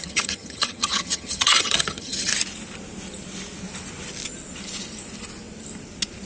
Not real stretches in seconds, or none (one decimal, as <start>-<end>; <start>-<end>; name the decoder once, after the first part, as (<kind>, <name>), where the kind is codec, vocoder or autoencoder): 0.0-2.3 (vocoder, HiFi-GAN)